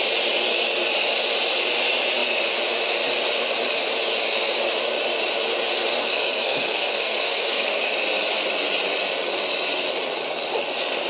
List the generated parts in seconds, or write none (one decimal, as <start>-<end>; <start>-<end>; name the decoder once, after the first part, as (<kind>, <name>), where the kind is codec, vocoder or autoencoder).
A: 6.0-7.9 (codec, SNAC)

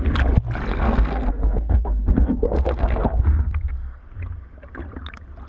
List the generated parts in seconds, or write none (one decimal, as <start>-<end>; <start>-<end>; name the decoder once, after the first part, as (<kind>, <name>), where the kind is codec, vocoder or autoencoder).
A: 0.7-4.0 (codec, SNAC)

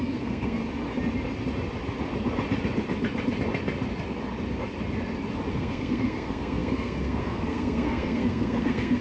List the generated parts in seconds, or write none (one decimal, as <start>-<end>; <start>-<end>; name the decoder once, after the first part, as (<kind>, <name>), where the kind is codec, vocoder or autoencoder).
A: 0.0-0.6 (codec, SNAC); 5.5-9.0

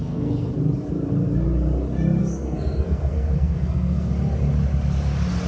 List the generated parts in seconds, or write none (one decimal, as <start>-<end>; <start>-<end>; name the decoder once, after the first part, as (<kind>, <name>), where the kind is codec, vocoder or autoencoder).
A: 0.0-0.5 (codec, SNAC); 2.2-4.1

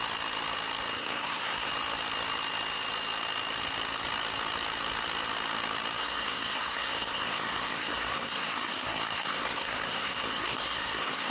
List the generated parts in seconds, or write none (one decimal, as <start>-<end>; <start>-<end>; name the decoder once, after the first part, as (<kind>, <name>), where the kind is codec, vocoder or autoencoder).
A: 1.0-1.7 (codec, SNAC); 6.0-11.3

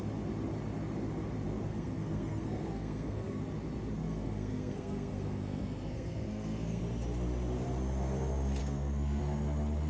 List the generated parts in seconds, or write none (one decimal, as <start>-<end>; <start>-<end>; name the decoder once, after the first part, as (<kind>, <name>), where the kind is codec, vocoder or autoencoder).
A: 1.7-3.4 (codec, SNAC); 4.0-6.8; 8.6-9.2

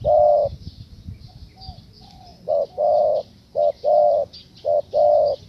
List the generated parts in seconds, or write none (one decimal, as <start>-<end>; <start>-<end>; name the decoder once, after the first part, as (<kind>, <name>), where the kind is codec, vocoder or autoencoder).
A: none

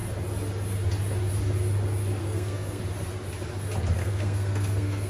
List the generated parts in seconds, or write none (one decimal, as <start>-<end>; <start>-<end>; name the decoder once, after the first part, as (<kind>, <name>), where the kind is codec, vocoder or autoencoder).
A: 2.2-2.8 (codec, SNAC); 4.0-5.1